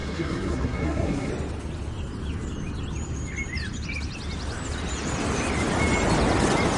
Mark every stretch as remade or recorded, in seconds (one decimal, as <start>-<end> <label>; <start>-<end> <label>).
0.0-1.3 remade; 1.3-6.8 recorded